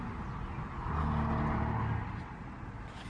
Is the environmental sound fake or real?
real